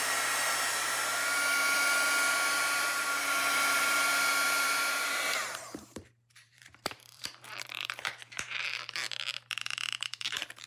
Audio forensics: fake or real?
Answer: fake